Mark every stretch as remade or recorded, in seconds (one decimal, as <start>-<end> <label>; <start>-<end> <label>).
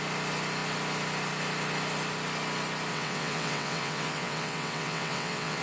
0.0-2.9 recorded; 2.9-5.6 remade